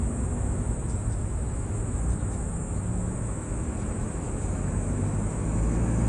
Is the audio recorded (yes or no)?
no